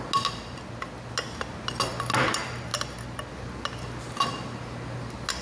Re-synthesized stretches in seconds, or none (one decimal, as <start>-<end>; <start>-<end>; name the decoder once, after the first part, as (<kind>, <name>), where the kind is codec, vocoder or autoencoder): none